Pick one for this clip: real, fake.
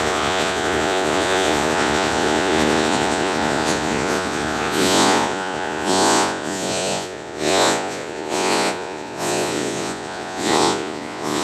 fake